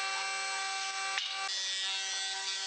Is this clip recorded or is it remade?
recorded